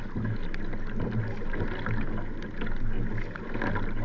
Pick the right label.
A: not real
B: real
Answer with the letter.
B